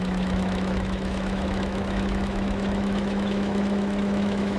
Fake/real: fake